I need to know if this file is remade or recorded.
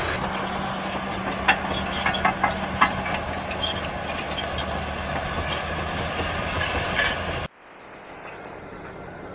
recorded